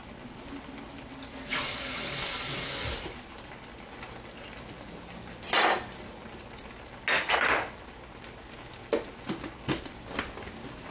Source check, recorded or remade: recorded